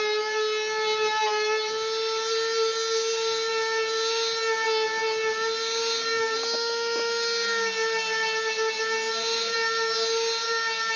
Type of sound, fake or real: real